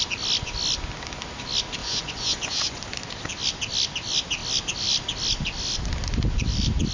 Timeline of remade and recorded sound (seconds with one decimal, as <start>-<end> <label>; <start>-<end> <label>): 0.0-1.8 recorded; 1.8-2.8 remade; 2.8-6.9 recorded